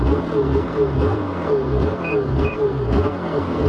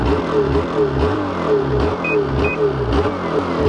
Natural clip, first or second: second